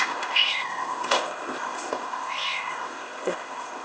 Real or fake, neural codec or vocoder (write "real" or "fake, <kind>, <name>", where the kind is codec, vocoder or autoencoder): fake, codec, ZipCodec